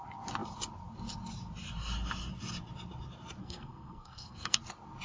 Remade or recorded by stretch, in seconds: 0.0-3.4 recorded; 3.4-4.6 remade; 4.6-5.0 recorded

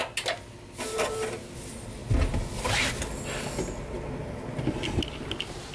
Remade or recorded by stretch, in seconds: 0.0-5.7 recorded

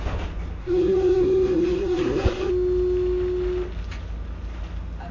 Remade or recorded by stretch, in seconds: 0.0-0.6 recorded; 0.6-2.5 remade; 2.5-5.1 recorded

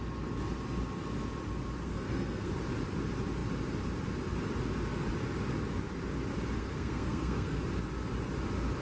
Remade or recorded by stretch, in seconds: 0.0-1.8 recorded; 1.8-2.5 remade; 2.5-6.6 recorded; 6.6-7.6 remade; 7.6-8.8 recorded

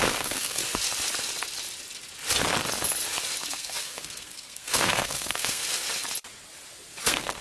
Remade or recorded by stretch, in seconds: 0.0-0.6 remade; 0.6-3.5 recorded; 3.5-5.6 remade; 5.6-7.0 recorded; 7.0-7.4 remade